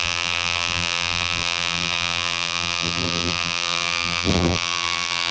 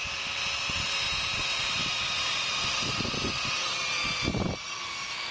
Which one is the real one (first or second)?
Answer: second